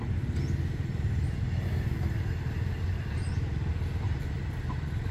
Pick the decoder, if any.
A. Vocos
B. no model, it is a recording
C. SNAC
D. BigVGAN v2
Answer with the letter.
B